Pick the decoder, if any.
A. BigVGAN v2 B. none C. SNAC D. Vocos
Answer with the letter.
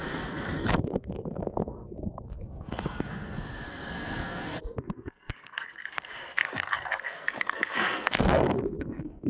C